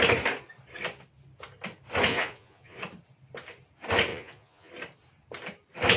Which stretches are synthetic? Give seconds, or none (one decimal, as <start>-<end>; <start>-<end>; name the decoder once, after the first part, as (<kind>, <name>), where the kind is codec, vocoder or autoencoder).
2.1-2.8 (vocoder, Vocos); 4.1-4.7